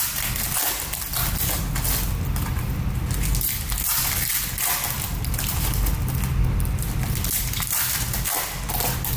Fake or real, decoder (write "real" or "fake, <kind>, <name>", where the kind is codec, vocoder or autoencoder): real